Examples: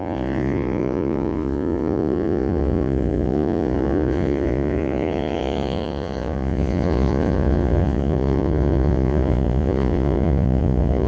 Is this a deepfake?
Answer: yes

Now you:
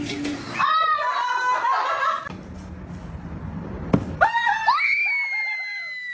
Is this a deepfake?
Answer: no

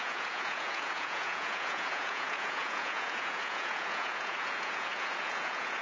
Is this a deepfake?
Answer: yes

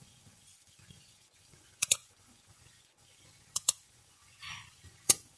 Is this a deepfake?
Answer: yes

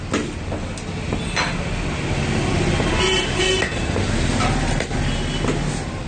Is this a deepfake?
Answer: no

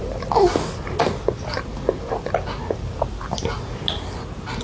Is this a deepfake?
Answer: no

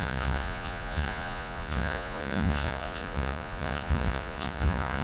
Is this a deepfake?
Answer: yes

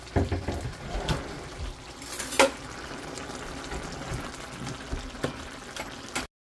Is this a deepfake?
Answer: no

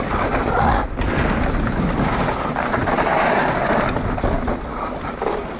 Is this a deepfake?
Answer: no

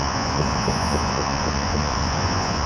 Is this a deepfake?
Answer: yes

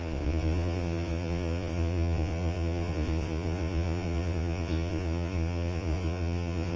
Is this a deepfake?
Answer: yes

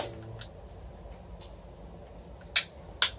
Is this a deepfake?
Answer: no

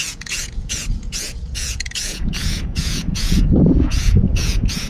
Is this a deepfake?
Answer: yes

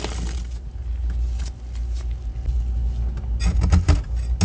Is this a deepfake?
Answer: no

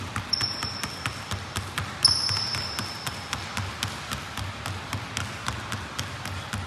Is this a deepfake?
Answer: no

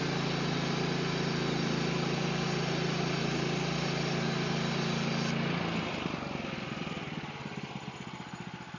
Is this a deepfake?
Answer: no